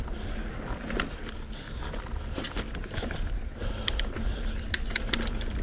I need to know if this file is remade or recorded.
recorded